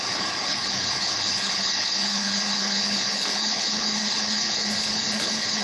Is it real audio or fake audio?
fake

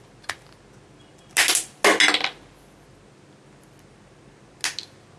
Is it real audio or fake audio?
real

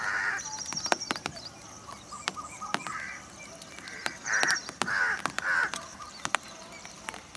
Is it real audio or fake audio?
real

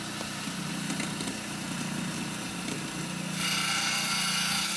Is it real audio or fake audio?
real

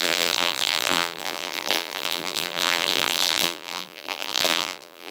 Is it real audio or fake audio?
fake